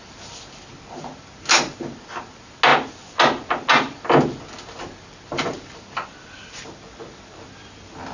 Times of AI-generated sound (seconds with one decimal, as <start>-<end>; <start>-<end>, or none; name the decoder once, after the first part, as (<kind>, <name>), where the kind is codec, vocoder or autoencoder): none